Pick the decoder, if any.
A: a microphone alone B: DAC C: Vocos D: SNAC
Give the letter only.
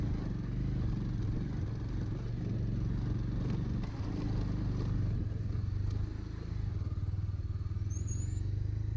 A